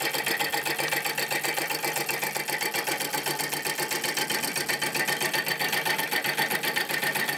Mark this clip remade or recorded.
recorded